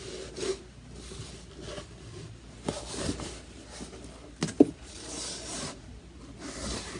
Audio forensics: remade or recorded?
recorded